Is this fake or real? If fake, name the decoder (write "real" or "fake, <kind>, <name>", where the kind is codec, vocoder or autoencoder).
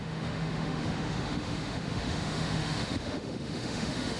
fake, autoencoder, DAC-VAE